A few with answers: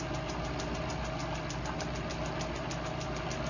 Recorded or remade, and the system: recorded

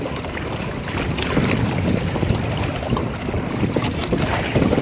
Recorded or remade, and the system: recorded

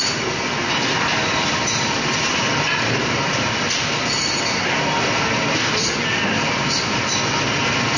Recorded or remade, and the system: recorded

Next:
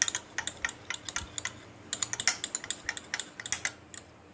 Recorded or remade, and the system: recorded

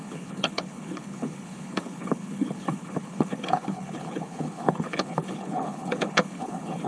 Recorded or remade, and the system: remade, codec, HILCodec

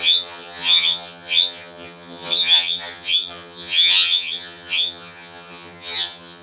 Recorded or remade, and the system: remade, vocoder, HiFi-GAN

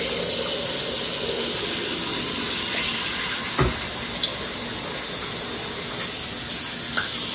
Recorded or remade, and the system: recorded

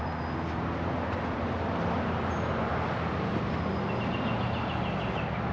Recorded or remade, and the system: recorded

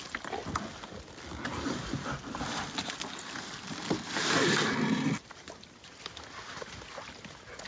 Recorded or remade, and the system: recorded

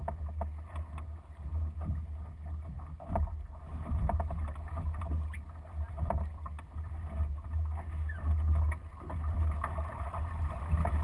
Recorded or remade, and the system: recorded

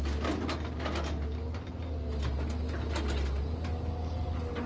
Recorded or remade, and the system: recorded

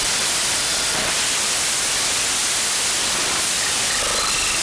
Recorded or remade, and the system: recorded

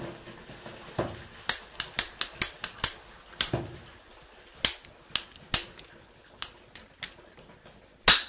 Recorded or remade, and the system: recorded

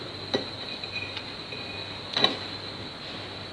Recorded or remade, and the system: recorded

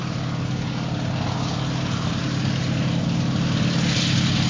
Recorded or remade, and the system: recorded